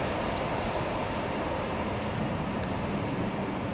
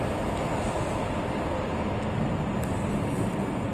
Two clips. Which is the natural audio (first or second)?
second